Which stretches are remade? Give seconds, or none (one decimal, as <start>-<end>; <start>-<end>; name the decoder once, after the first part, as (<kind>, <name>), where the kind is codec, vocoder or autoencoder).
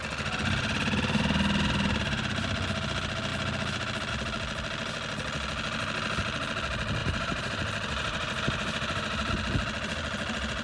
7.0-9.3 (vocoder, BigVGAN v2)